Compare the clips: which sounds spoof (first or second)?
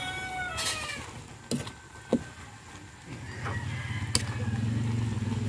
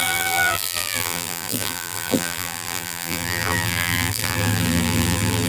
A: second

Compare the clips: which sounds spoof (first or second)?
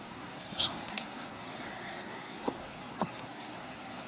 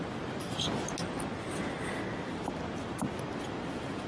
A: first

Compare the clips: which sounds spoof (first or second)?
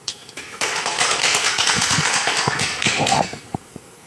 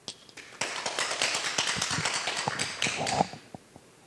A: first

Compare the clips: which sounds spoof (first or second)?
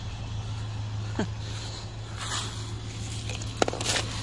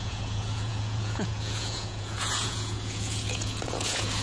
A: second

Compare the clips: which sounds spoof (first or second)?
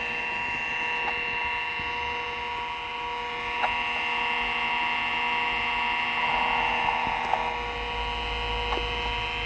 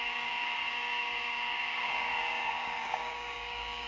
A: second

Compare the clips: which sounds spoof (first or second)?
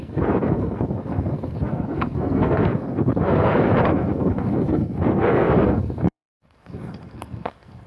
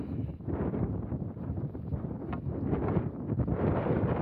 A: first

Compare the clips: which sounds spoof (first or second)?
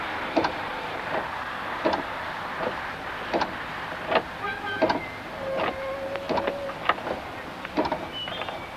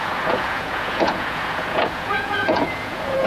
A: second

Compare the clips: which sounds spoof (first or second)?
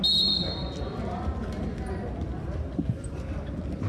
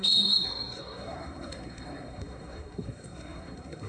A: second